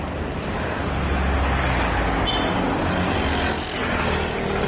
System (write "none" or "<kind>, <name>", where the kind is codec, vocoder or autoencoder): none